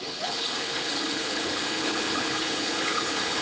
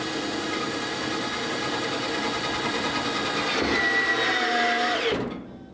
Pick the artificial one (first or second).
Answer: first